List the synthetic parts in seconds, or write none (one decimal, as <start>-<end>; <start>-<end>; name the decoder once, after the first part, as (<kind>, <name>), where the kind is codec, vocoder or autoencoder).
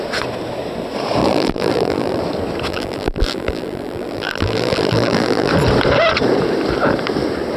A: 1.2-2.2 (vocoder, BigVGAN v2); 2.7-5.5